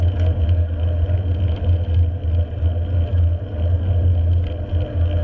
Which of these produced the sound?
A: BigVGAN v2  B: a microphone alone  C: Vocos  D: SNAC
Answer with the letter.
B